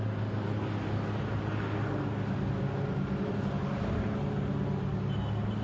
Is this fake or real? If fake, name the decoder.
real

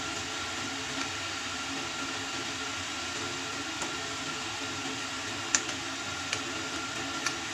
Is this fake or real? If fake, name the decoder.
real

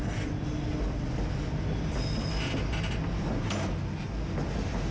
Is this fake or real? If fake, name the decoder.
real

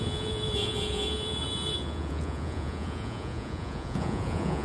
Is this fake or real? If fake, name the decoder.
fake, vocoder, Vocos